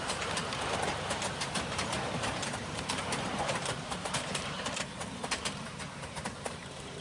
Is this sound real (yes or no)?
no